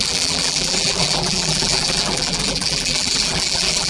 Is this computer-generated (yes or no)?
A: yes